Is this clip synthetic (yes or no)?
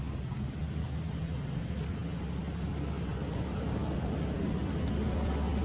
no